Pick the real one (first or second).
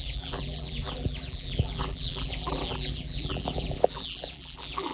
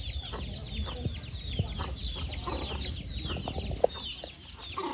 second